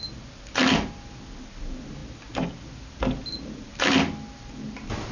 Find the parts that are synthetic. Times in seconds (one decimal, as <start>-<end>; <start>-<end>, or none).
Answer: none